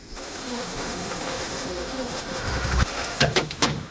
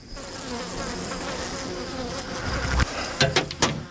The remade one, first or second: first